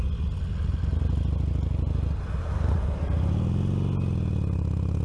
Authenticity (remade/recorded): recorded